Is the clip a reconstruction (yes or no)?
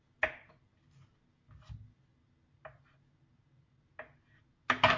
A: no